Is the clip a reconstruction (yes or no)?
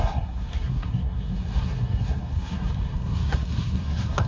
yes